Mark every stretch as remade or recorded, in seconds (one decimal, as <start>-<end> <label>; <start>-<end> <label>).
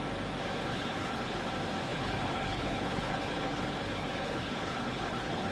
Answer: 0.0-0.7 recorded; 0.7-1.5 remade; 1.5-1.9 recorded; 1.9-5.5 remade